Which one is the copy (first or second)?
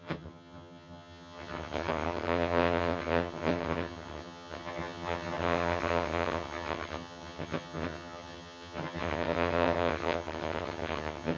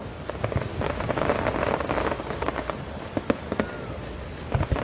first